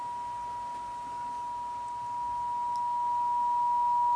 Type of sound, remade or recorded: recorded